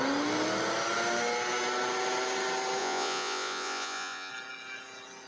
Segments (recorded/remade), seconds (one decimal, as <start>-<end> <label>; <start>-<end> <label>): 0.0-2.8 recorded; 2.8-4.3 remade; 4.3-5.3 recorded